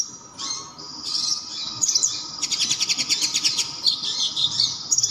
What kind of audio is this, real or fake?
real